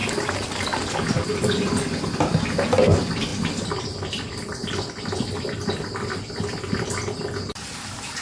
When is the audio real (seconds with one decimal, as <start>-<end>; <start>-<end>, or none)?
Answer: 0.0-8.2